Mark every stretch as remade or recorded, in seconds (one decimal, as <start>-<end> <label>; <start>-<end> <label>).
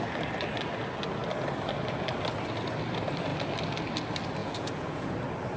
0.0-4.4 recorded; 4.4-5.1 remade; 5.1-5.6 recorded